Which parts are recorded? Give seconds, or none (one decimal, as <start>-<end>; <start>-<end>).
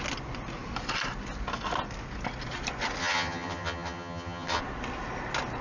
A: 0.0-3.0; 4.6-5.6